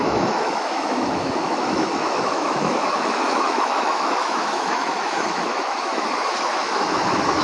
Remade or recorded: remade